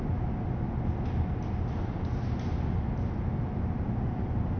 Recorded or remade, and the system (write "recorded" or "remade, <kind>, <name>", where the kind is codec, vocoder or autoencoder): recorded